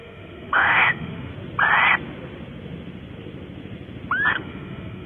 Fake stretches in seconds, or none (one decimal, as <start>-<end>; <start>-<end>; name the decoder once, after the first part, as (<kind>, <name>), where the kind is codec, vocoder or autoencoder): 0.0-1.3 (autoencoder, DAC-VAE); 4.3-5.1